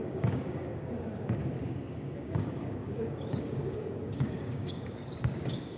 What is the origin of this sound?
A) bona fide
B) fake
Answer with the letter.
B